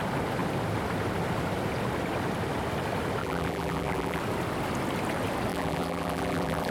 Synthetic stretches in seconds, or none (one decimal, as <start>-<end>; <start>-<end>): 3.2-4.2; 5.5-6.7